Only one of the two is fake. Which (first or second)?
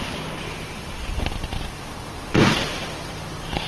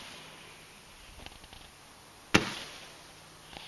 first